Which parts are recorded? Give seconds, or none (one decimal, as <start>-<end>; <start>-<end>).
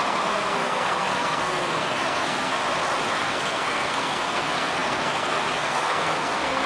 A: 2.6-3.1